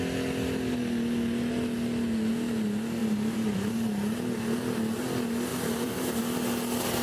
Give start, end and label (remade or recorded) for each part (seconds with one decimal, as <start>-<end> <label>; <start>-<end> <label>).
0.0-3.0 recorded; 3.0-3.7 remade; 3.7-5.5 recorded; 5.5-6.2 remade; 6.2-7.0 recorded

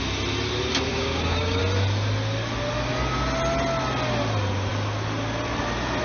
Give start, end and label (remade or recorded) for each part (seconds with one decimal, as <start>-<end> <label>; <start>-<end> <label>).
0.0-0.9 recorded; 0.9-1.6 remade; 1.6-6.0 recorded